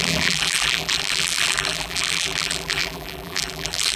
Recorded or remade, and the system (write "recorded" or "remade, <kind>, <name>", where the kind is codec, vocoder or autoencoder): remade, vocoder, BigVGAN v2